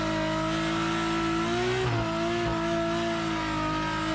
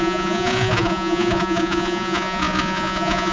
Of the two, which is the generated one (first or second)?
second